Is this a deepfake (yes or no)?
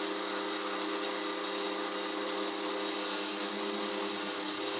no